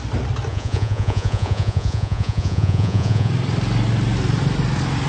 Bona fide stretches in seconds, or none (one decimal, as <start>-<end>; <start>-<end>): 0.0-0.5; 3.3-5.1